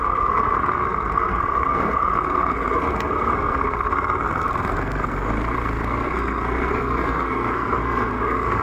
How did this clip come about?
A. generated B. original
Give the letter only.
A